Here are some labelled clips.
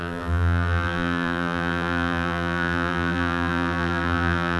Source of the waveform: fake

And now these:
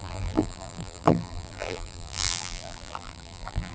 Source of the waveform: fake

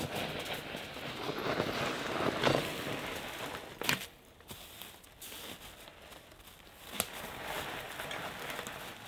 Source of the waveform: real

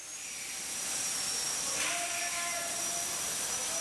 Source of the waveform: real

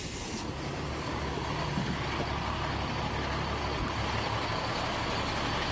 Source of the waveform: real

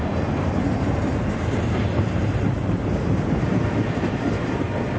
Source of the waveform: fake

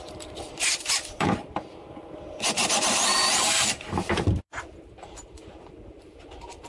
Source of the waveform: fake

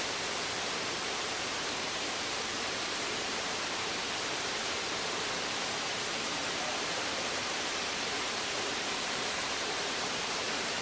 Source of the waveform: fake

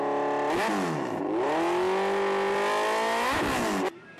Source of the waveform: real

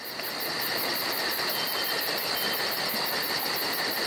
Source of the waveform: real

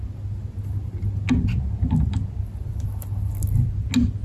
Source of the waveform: real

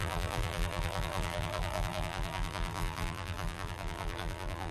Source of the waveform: fake